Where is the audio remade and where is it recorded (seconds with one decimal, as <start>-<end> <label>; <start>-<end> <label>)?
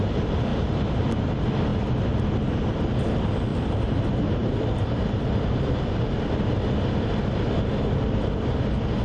0.0-0.5 recorded; 0.5-1.2 remade; 1.2-3.5 recorded; 3.5-4.0 remade; 4.0-4.4 recorded; 4.4-6.0 remade; 6.0-9.0 recorded